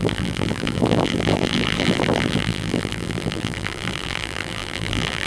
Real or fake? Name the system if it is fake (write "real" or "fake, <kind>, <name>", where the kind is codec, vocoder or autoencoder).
fake, vocoder, BigVGAN v2